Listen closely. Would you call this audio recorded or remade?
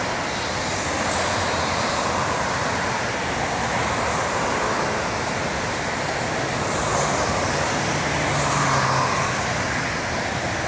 recorded